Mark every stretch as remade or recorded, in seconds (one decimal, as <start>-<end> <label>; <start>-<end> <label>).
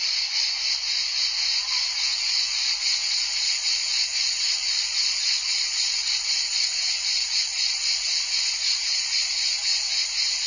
0.0-9.7 remade; 9.7-10.5 recorded